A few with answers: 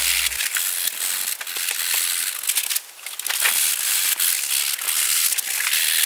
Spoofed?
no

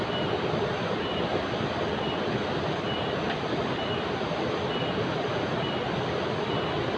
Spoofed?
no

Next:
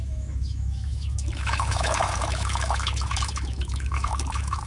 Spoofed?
yes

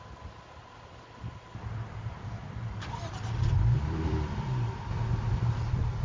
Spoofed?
yes